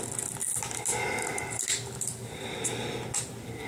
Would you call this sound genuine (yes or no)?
yes